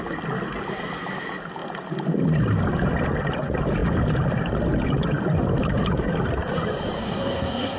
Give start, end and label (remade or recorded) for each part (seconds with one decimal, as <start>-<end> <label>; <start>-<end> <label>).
0.0-7.0 recorded; 7.0-7.8 remade